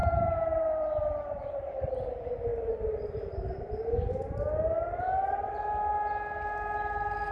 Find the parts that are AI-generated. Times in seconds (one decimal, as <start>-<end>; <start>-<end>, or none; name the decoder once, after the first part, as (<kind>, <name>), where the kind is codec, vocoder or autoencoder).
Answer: 0.0-1.7 (vocoder, BigVGAN v2)